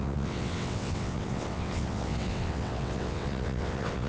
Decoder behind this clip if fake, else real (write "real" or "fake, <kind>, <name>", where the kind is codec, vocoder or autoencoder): fake, vocoder, WaveNeXt